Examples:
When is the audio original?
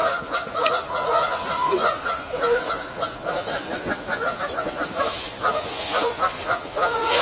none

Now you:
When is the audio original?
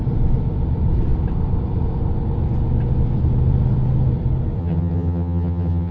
0.0-4.6